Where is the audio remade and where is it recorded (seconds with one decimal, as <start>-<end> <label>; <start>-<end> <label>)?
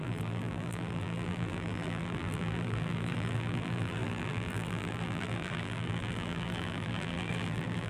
0.0-7.9 remade